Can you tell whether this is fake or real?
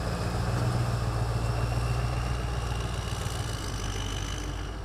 real